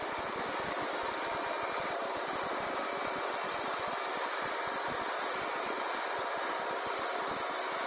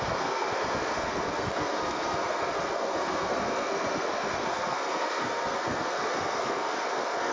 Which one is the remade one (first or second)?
second